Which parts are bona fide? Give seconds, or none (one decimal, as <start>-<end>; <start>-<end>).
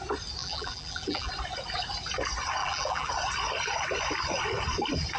0.0-0.4; 1.3-2.6; 3.1-5.2